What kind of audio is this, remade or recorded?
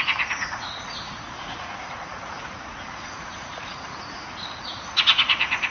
remade